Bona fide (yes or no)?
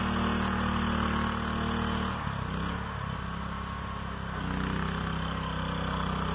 yes